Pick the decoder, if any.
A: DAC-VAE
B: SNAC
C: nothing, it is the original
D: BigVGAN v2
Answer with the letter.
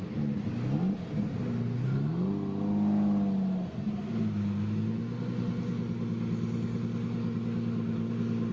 C